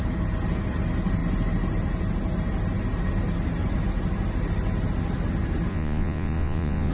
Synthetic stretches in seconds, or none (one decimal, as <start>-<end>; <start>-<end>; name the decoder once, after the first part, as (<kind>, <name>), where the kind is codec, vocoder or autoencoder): 5.7-6.9 (vocoder, Vocos)